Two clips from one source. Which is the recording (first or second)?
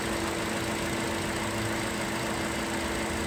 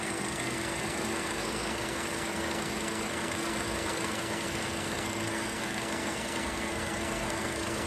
first